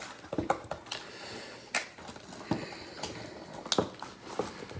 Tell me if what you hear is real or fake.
real